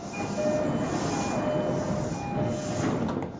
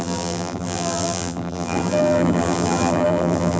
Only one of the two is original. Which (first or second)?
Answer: first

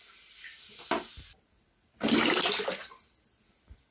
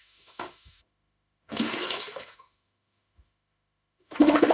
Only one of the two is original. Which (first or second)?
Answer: first